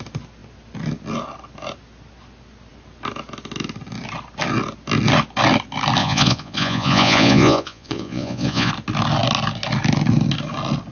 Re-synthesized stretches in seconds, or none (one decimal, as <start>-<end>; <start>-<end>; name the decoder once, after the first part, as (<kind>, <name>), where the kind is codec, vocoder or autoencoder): 6.0-8.7 (vocoder, Vocos)